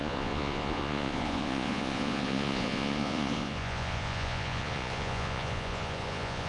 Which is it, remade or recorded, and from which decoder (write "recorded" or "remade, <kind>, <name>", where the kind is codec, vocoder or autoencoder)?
remade, vocoder, Vocos